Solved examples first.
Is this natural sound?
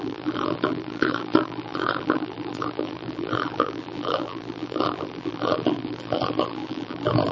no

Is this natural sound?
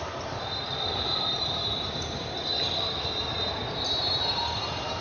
no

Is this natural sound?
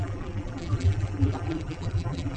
no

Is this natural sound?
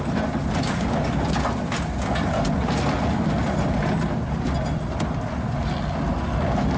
yes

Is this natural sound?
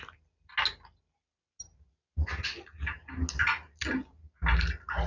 yes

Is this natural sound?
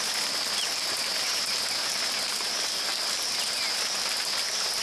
yes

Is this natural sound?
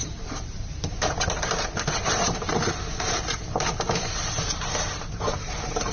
no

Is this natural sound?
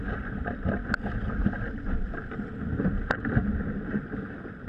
yes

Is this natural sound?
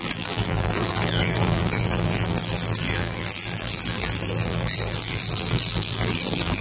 no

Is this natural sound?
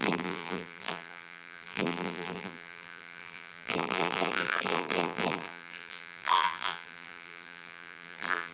no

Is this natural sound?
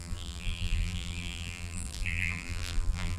no